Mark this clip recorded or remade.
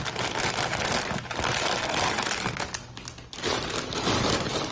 recorded